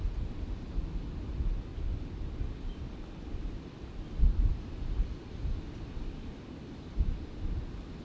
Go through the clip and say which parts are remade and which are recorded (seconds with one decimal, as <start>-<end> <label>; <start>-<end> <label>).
0.0-8.0 recorded